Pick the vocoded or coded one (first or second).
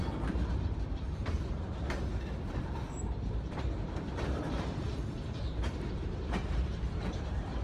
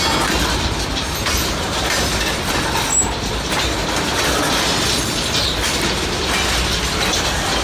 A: first